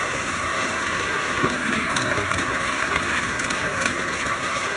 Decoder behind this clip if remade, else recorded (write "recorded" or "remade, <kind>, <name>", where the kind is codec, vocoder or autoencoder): remade, codec, SNAC